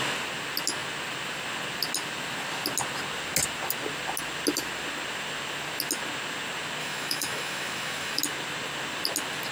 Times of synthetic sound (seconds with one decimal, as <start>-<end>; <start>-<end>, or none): 6.8-8.2